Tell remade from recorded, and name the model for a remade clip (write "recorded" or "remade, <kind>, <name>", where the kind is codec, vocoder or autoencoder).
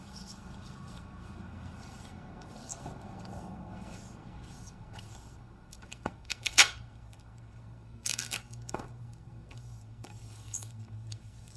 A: remade, codec, SNAC